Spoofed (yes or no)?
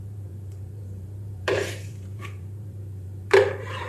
yes